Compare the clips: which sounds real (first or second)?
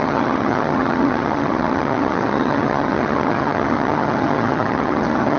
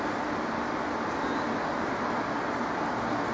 second